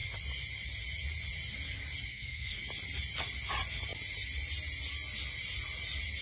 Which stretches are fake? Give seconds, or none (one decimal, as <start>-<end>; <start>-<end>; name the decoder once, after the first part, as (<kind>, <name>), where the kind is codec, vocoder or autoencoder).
2.1-2.6 (codec, SNAC)